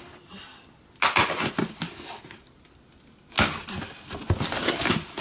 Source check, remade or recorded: recorded